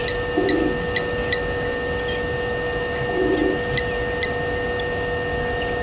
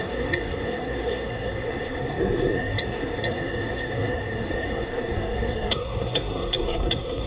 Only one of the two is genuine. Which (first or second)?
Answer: first